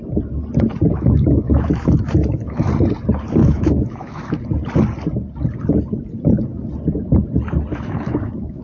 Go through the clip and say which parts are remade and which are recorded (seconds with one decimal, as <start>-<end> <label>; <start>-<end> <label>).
0.0-0.9 recorded; 0.9-2.7 remade; 2.7-3.4 recorded; 3.4-4.4 remade; 4.4-7.7 recorded; 7.7-8.6 remade